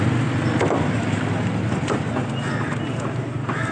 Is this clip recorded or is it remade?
recorded